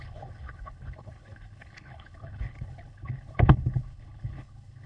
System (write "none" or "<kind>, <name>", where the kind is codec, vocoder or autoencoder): codec, HILCodec